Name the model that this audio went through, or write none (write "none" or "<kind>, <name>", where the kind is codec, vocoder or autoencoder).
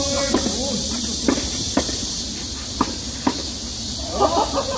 none